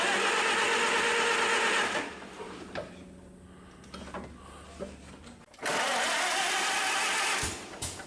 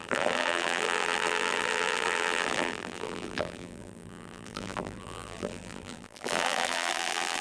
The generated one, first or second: second